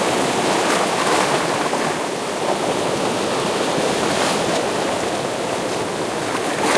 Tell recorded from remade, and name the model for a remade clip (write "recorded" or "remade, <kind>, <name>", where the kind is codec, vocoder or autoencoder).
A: recorded